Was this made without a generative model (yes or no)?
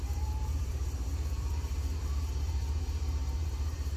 no